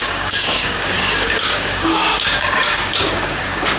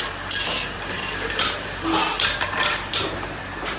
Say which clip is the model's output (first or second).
first